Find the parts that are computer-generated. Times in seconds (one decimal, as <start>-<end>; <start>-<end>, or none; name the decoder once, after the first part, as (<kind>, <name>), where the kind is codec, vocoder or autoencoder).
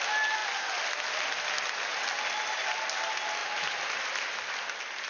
none